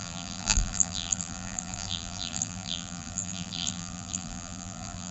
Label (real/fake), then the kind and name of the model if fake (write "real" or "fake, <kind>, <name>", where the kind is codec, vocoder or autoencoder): fake, vocoder, BigVGAN v2